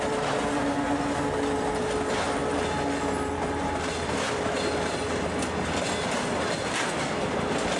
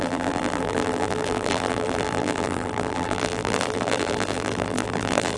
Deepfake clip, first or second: second